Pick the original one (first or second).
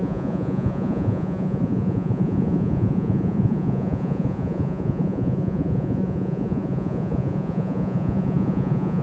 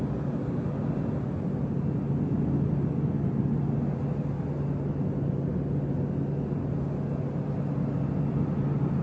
second